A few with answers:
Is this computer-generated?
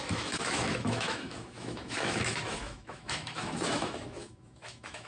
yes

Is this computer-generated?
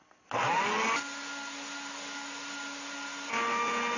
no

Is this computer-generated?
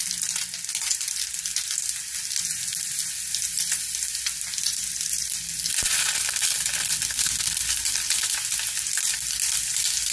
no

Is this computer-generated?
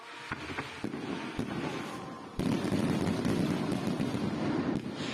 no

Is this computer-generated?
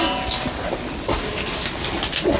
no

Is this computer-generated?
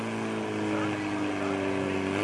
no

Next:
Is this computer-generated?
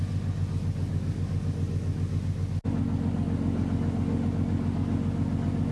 no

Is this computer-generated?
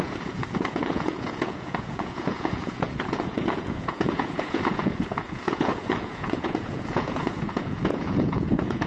yes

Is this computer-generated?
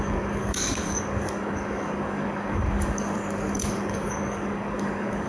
yes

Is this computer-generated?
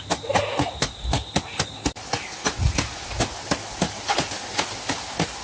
no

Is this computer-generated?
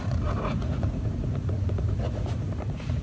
yes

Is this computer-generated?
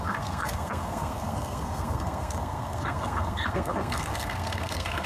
yes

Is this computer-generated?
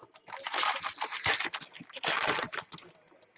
no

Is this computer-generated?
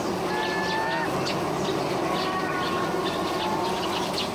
no